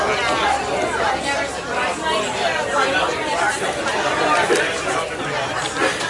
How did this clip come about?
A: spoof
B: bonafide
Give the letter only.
B